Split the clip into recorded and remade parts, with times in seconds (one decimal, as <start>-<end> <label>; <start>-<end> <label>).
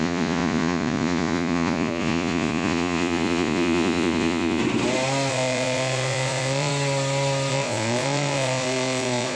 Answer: 0.0-4.6 remade; 4.6-5.3 recorded; 5.3-6.7 remade; 6.7-7.5 recorded; 7.5-9.4 remade